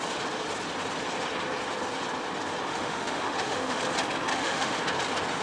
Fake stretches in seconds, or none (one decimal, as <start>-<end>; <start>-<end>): 2.7-3.8; 4.3-4.8